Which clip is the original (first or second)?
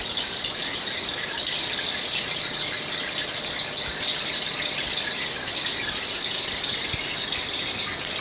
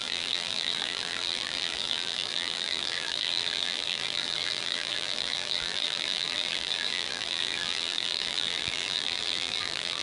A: first